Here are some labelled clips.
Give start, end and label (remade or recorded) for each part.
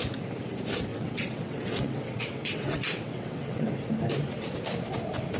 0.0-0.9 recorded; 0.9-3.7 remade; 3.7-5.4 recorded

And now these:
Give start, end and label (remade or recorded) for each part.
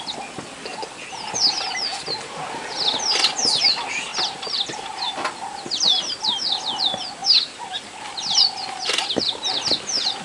0.0-10.2 recorded